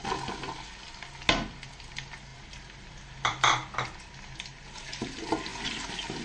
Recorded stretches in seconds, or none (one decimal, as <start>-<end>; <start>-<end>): 0.0-2.3; 4.0-6.2